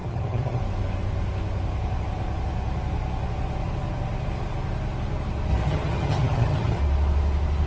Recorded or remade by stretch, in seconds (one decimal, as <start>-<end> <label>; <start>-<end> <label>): 0.0-0.6 remade; 0.6-5.5 recorded; 5.5-6.8 remade; 6.8-7.7 recorded